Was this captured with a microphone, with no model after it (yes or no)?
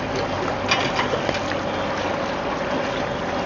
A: yes